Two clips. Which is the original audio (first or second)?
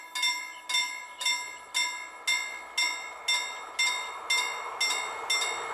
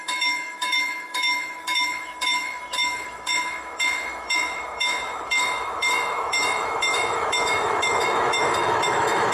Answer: first